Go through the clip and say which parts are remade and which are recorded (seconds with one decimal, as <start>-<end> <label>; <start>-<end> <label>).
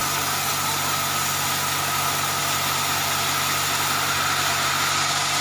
0.0-5.4 recorded